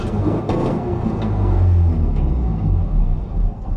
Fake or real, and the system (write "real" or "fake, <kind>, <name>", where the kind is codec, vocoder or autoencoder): fake, codec, SNAC